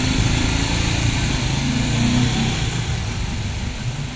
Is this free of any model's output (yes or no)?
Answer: yes